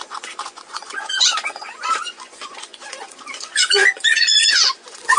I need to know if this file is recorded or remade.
remade